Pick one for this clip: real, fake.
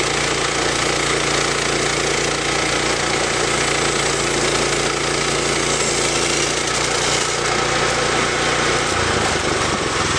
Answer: real